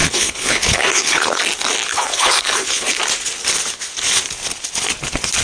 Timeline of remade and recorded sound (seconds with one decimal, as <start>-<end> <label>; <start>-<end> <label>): 0.0-1.4 remade; 1.4-1.9 recorded; 1.9-3.0 remade; 3.0-5.4 recorded